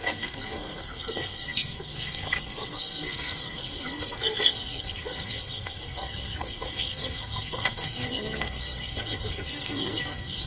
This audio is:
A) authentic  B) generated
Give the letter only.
B